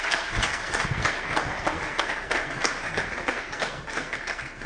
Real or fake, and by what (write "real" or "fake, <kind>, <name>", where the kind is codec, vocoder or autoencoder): fake, codec, SNAC